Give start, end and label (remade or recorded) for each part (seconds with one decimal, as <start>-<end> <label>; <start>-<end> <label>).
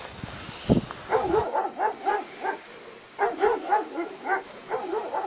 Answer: 0.0-3.5 recorded; 3.5-4.2 remade; 4.2-5.3 recorded